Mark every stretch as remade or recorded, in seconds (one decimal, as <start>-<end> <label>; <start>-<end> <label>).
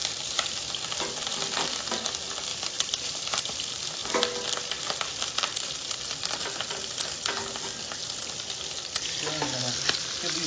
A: 0.0-0.7 remade; 0.7-2.5 recorded; 2.5-3.4 remade; 3.4-10.5 recorded